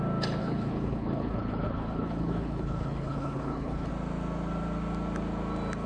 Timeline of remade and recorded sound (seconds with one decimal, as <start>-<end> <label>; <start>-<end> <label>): 0.0-0.4 recorded; 0.4-3.9 remade; 3.9-5.9 recorded